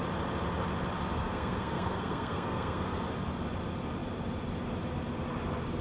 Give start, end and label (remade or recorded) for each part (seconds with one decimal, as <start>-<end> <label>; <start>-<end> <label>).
0.0-1.1 recorded; 1.1-3.0 remade; 3.0-5.8 recorded